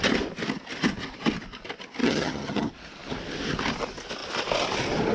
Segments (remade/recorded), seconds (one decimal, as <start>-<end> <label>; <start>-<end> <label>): 0.0-2.0 recorded; 2.0-2.7 remade; 2.7-5.1 recorded

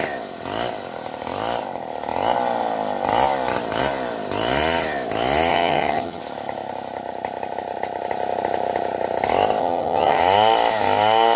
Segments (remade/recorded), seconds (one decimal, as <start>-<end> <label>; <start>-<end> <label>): 0.0-5.5 recorded; 5.5-6.2 remade; 6.2-9.6 recorded; 9.6-10.2 remade; 10.2-11.4 recorded

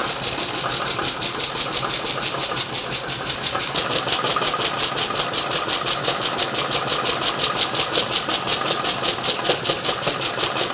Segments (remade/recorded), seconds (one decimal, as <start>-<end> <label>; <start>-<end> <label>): 0.0-10.7 recorded